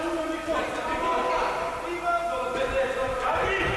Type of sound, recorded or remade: recorded